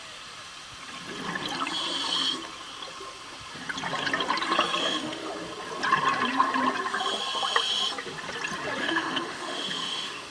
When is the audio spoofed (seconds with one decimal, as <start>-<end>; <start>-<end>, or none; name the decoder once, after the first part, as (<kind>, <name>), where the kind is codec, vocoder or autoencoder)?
4.8-5.3 (autoencoder, DAC-VAE); 8.8-10.3